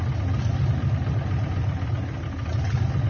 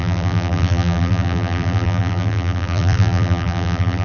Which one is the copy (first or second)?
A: second